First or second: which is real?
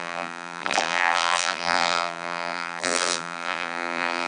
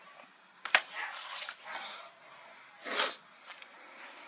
second